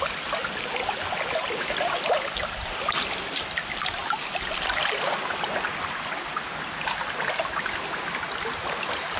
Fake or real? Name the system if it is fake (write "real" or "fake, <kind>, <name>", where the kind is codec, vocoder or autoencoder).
real